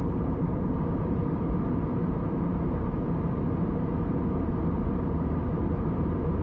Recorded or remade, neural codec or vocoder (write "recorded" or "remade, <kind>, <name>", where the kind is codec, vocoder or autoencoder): remade, vocoder, BigVGAN v2